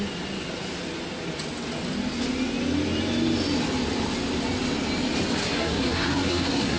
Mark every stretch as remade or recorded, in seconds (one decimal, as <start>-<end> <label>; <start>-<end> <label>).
0.0-5.4 recorded; 5.4-6.8 remade

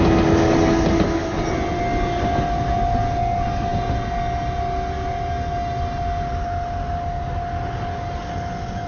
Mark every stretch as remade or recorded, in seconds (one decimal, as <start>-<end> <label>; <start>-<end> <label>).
0.0-8.9 recorded

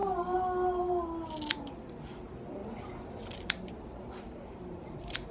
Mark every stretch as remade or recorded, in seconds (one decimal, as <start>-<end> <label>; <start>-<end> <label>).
0.0-2.2 recorded; 2.2-2.6 remade; 2.6-4.2 recorded; 4.2-5.3 remade

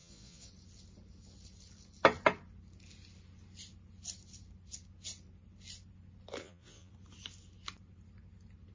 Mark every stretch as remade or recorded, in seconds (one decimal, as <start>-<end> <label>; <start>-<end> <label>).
0.0-0.5 remade; 0.5-6.4 recorded; 6.4-6.9 remade; 6.9-8.7 recorded